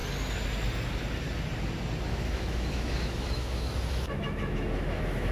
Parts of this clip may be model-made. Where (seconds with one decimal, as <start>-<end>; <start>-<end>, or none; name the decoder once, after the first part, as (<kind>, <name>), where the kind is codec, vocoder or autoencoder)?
2.1-5.3 (autoencoder, DAC-VAE)